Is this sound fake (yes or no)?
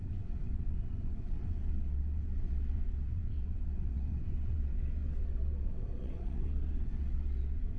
yes